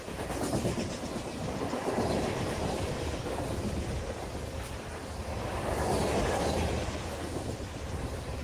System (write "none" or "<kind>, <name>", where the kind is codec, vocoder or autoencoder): none